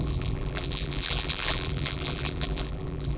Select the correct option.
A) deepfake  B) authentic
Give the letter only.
A